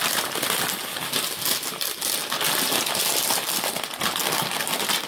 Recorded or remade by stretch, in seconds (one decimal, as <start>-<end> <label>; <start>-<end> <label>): 0.0-5.1 recorded